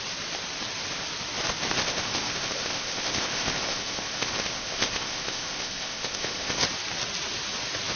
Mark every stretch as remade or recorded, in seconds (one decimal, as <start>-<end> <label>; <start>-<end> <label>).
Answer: 0.0-1.8 recorded; 1.8-6.6 remade; 6.6-8.0 recorded